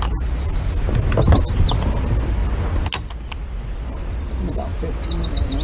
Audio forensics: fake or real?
real